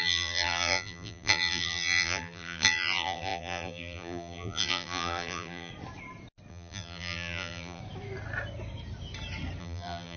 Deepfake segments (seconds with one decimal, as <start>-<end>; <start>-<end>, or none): 0.0-5.7; 6.5-7.8; 9.6-10.2